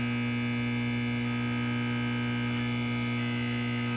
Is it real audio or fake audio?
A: real